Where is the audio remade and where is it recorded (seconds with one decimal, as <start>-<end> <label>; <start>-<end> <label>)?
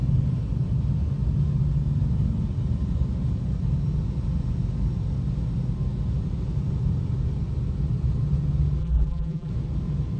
0.0-8.8 recorded; 8.8-9.5 remade; 9.5-10.2 recorded